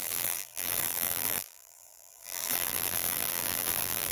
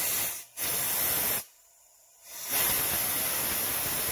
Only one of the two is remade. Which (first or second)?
first